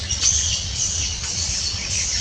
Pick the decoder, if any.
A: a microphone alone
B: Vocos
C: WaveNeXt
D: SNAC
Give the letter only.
B